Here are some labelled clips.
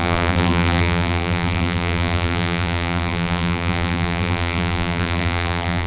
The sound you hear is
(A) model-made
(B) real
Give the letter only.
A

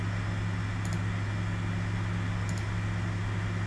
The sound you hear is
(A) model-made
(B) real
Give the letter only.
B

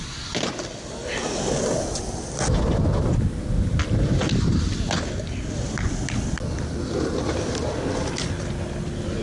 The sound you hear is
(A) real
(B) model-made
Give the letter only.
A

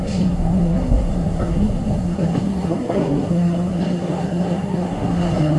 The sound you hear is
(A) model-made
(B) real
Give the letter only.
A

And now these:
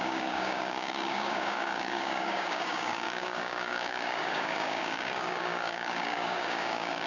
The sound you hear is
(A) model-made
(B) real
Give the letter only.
A